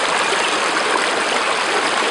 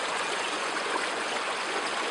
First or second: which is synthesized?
second